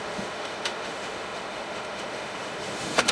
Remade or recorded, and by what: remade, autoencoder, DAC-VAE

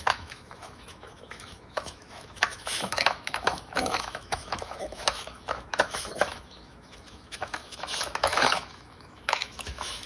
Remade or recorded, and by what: remade, autoencoder, DAC-VAE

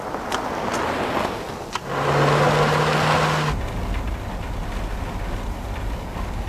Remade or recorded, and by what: recorded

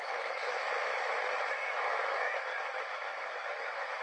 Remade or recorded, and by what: remade, autoencoder, DAC-VAE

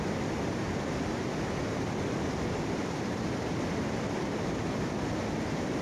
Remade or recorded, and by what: recorded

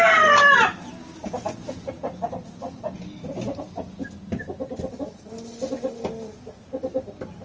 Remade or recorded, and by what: recorded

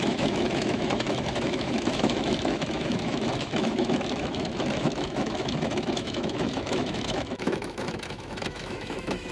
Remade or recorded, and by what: remade, autoencoder, DAC-VAE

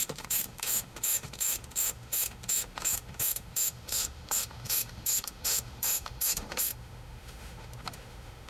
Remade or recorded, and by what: remade, autoencoder, DAC-VAE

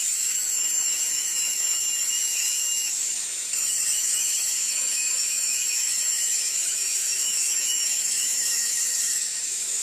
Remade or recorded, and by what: remade, autoencoder, DAC-VAE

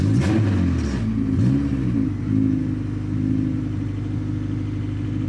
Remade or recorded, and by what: recorded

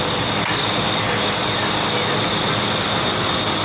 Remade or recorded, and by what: recorded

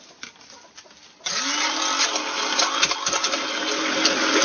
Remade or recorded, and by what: recorded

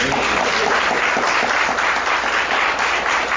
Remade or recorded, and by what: recorded